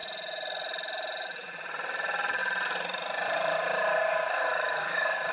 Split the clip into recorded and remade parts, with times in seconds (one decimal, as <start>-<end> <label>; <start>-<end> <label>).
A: 0.0-3.9 recorded; 3.9-5.3 remade